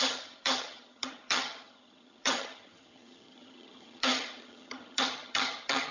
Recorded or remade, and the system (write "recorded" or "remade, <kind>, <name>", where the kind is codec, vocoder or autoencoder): remade, vocoder, HiFi-GAN